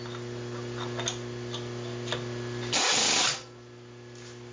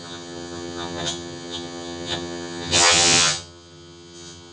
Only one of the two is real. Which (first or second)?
first